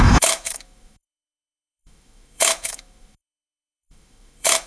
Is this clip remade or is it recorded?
remade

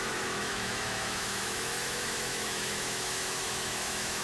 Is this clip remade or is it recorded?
remade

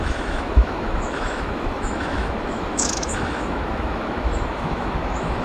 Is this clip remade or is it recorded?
remade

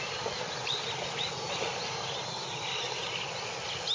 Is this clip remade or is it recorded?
recorded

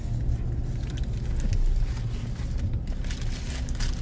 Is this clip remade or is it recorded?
recorded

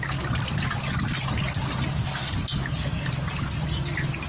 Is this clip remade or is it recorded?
recorded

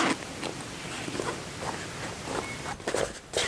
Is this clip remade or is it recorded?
recorded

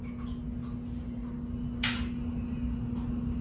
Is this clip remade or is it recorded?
recorded